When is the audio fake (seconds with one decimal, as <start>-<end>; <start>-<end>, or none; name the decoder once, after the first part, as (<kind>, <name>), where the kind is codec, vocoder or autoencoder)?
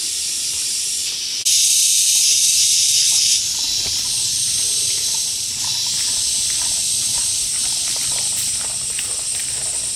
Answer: none